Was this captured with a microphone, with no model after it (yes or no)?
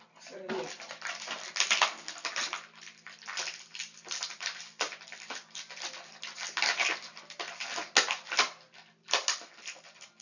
yes